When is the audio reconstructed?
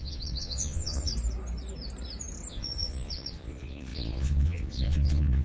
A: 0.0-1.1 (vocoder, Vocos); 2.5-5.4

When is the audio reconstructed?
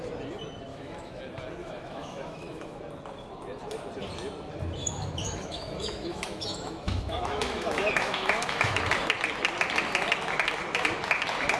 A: 0.7-1.2 (autoencoder, DAC-VAE); 1.6-2.8; 4.8-8.8